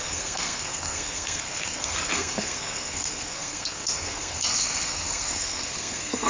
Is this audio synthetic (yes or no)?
yes